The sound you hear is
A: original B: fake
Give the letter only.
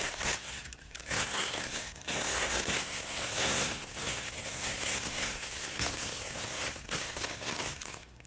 B